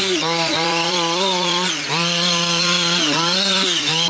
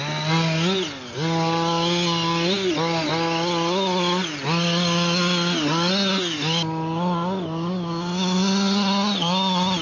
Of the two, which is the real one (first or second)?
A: second